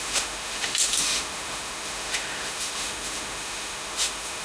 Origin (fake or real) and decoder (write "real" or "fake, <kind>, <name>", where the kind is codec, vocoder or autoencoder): fake, autoencoder, DAC-VAE